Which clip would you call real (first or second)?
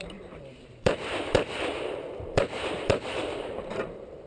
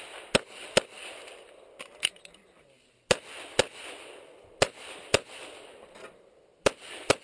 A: second